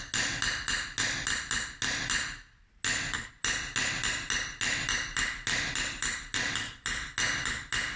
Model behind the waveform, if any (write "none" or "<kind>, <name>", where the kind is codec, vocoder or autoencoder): none